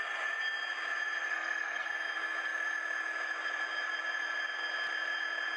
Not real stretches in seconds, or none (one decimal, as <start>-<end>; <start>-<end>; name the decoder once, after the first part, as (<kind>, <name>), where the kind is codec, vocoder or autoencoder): 1.3-1.9 (codec, SNAC)